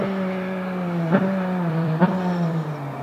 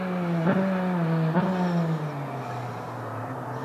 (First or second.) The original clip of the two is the second